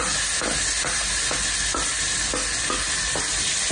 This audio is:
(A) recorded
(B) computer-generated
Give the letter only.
A